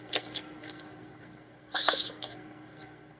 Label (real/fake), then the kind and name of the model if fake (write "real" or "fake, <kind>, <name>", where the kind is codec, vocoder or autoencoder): fake, codec, SNAC